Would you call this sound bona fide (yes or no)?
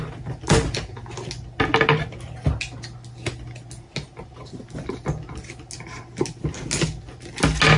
yes